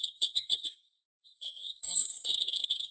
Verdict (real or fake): fake